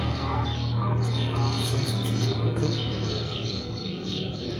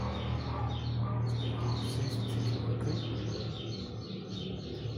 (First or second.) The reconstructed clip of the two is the first